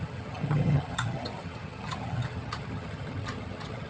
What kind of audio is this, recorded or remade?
remade